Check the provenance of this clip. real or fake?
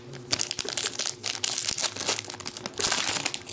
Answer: real